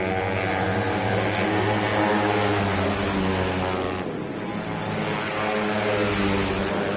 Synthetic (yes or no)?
no